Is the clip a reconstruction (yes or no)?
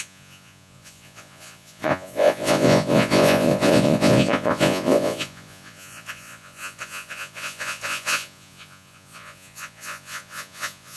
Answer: yes